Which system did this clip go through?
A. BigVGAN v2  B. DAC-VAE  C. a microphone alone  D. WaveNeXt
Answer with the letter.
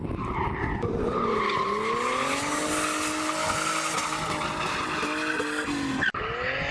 C